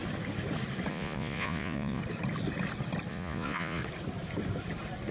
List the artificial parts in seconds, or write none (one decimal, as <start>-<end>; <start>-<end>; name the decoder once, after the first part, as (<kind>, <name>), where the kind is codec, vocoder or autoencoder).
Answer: 0.9-2.0 (vocoder, Vocos); 3.1-3.8